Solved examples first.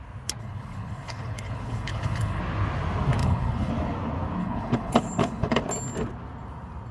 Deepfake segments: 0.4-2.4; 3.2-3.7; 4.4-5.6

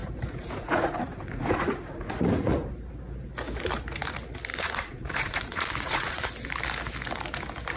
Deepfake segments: 0.0-2.7; 4.5-6.3

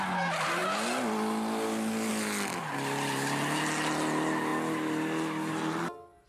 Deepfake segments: none

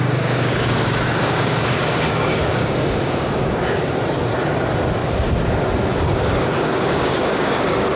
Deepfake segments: 0.0-3.8; 6.0-8.0

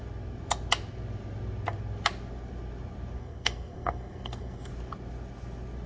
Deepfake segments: 3.2-4.7

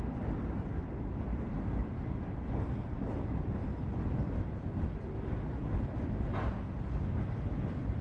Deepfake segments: none